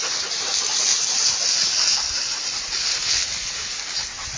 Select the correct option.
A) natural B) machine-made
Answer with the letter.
A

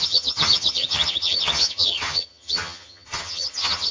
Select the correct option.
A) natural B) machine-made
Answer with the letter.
B